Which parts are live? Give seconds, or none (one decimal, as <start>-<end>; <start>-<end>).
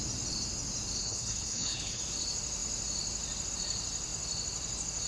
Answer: 0.0-1.0; 2.0-5.1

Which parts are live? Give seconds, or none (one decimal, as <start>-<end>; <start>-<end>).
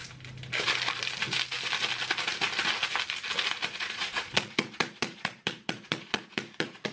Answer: 0.0-3.8